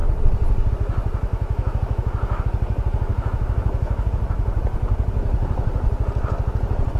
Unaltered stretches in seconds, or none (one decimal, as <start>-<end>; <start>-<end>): 0.0-1.3; 2.4-3.1; 4.1-7.0